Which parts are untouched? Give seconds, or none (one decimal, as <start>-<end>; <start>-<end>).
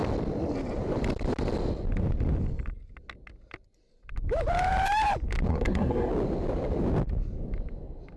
0.0-5.5; 6.1-8.2